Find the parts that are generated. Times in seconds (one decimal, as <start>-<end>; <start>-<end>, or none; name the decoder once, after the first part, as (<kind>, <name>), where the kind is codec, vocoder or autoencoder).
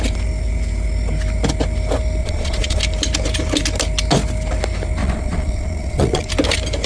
2.2-2.8 (vocoder, Vocos); 5.0-6.3